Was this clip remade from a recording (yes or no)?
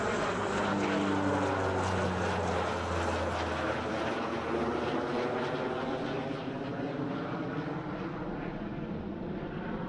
no